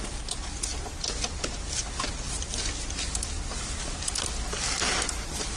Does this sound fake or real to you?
real